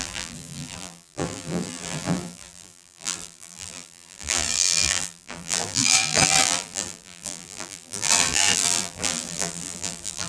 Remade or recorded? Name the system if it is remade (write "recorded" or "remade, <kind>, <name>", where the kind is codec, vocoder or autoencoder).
remade, vocoder, BigVGAN v2